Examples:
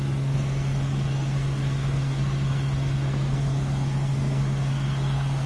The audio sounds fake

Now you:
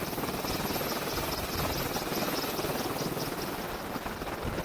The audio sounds real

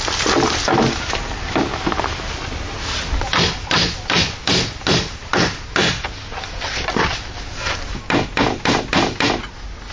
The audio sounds real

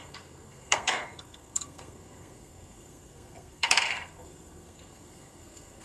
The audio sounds fake